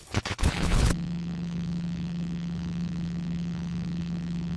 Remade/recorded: remade